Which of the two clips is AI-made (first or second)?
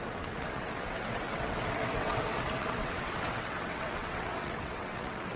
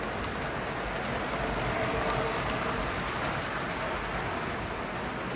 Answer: first